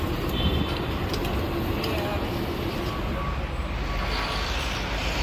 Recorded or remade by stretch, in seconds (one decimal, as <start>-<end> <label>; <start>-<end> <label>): 0.0-5.2 recorded